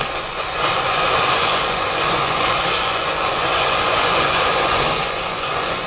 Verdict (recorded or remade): remade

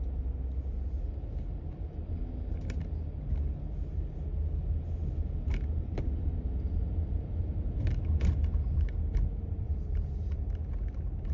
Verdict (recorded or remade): recorded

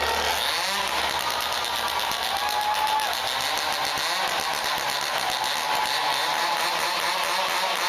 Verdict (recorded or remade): recorded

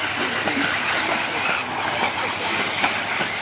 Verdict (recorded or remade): recorded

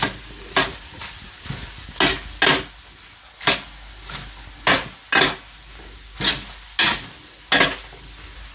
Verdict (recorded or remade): recorded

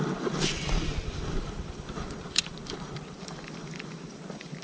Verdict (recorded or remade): remade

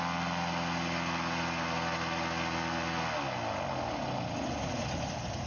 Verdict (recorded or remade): recorded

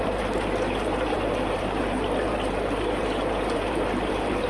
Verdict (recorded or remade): remade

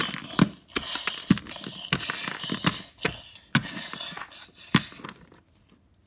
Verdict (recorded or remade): recorded